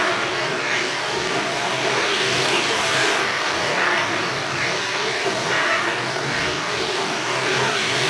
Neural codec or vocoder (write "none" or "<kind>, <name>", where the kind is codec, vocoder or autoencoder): codec, DAC